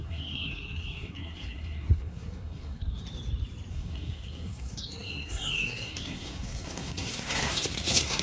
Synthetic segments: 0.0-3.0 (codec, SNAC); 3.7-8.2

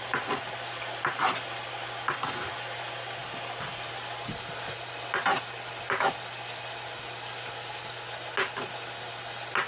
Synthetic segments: none

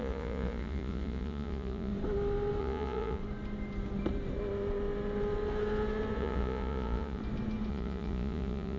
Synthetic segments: 0.0-1.9 (vocoder, Vocos); 2.6-3.2; 6.2-7.2; 7.7-8.8